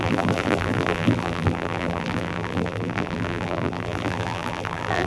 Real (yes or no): no